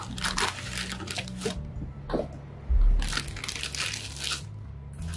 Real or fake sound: real